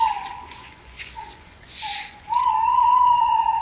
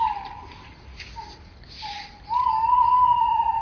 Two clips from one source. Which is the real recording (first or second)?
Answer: second